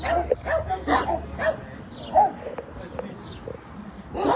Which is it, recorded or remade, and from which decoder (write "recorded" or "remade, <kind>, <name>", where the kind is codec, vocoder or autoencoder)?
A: recorded